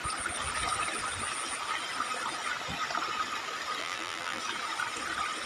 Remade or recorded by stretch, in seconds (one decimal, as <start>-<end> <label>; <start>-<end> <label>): 0.0-3.8 recorded; 3.8-4.4 remade; 4.4-5.5 recorded